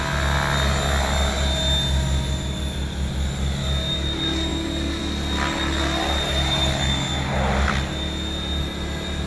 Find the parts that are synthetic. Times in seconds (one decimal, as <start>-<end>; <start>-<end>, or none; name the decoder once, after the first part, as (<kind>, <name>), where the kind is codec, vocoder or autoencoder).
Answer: none